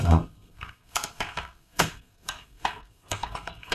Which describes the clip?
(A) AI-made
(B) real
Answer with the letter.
A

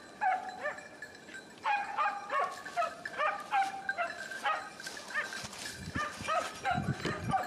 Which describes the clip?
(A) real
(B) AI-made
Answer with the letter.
A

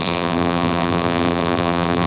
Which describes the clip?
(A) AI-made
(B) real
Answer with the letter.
A